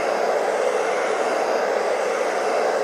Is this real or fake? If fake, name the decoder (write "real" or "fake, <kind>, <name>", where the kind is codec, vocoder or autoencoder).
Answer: real